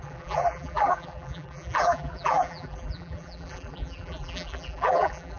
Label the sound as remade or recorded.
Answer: remade